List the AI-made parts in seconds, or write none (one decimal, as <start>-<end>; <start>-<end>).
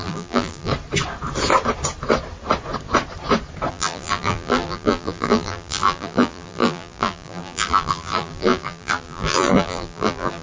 0.0-0.7; 3.7-10.4